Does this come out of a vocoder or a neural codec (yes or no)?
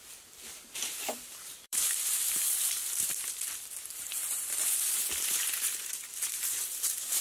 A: yes